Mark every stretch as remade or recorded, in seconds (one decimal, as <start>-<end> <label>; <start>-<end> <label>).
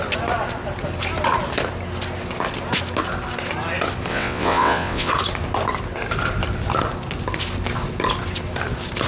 0.0-4.1 recorded; 4.1-5.1 remade; 5.1-9.1 recorded